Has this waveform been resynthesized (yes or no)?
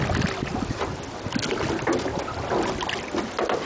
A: no